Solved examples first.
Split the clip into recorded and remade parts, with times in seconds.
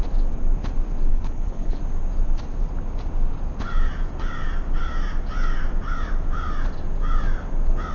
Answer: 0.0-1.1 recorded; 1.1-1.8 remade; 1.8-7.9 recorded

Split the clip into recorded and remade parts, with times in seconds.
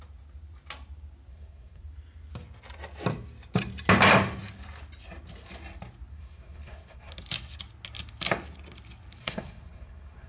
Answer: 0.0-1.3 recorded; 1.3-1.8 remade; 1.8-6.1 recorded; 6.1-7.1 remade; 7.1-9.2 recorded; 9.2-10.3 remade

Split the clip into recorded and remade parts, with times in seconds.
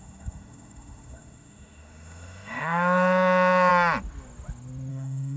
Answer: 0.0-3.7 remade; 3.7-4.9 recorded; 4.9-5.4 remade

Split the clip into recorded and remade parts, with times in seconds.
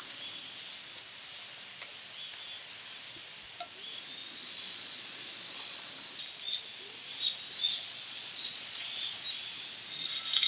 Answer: 0.0-4.2 recorded; 4.2-5.9 remade; 5.9-7.6 recorded; 7.6-9.2 remade; 9.2-10.5 recorded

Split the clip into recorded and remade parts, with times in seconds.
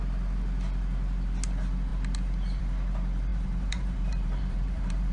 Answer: 0.0-3.3 recorded; 3.3-5.1 remade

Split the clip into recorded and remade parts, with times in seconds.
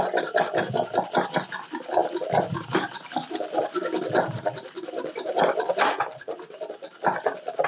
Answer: 0.0-2.0 recorded; 2.0-6.6 remade; 6.6-7.7 recorded